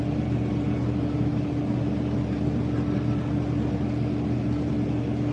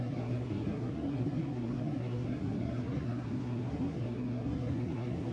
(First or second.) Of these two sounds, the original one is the first